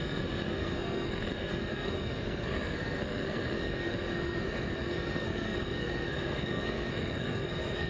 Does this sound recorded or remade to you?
remade